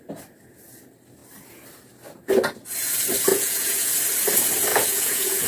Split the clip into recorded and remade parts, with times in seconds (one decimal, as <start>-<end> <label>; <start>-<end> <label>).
0.0-3.3 recorded; 3.3-3.9 remade; 3.9-4.7 recorded; 4.7-5.5 remade